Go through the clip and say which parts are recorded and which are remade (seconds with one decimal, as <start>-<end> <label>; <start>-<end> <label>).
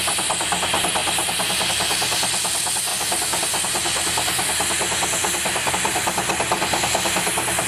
0.0-1.0 recorded; 1.0-1.7 remade; 1.7-7.7 recorded